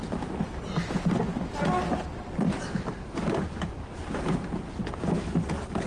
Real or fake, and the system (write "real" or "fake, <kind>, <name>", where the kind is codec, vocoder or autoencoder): real